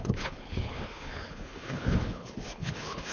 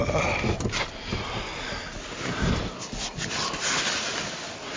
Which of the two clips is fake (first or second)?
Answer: first